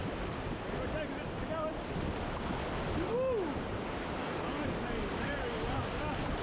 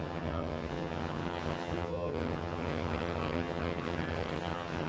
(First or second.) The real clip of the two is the first